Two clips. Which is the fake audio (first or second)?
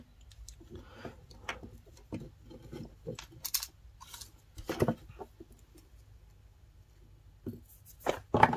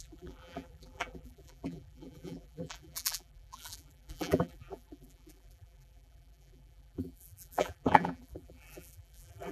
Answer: second